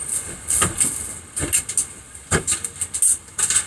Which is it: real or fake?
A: real